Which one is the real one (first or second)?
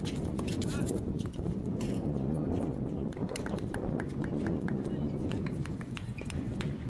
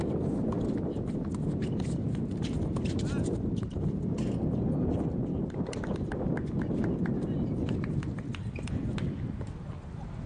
second